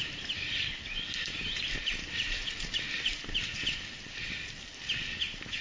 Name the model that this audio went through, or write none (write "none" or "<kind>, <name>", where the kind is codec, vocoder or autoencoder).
none